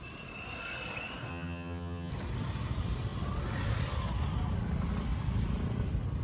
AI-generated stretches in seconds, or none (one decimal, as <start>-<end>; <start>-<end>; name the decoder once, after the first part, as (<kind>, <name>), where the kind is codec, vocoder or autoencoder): 1.3-2.1 (vocoder, HiFi-GAN)